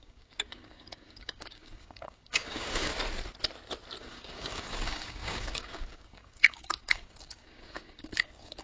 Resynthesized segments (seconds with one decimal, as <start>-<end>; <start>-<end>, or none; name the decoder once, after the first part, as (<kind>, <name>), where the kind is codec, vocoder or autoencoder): 0.0-2.9 (codec, DAC); 4.0-8.6